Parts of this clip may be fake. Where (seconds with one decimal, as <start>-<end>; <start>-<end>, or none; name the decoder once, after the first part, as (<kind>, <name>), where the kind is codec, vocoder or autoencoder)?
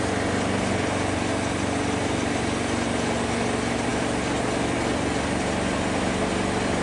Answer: none